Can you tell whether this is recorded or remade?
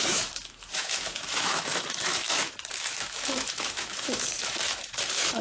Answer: remade